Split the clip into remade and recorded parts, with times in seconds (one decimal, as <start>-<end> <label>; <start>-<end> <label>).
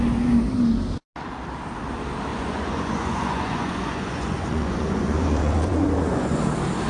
0.0-2.3 recorded; 2.3-6.4 remade; 6.4-6.9 recorded